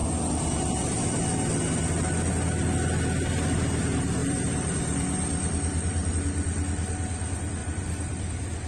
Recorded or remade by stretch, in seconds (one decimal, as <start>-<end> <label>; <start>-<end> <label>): 0.0-4.2 recorded; 4.2-6.1 remade; 6.1-7.6 recorded; 7.6-8.7 remade